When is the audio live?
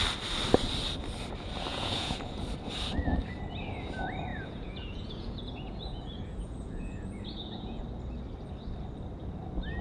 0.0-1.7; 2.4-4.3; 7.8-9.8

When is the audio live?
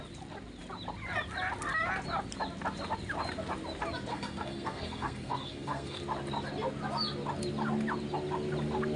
0.0-4.1; 6.0-9.0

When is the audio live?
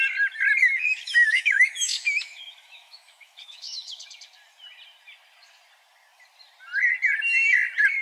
0.0-0.6; 4.0-8.0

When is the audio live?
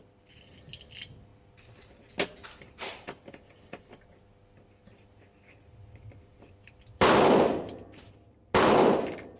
0.0-6.3; 8.2-9.4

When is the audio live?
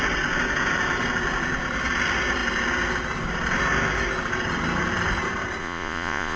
0.0-5.6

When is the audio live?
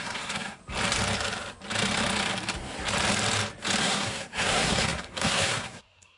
0.6-3.8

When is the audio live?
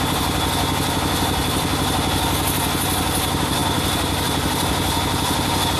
0.0-5.8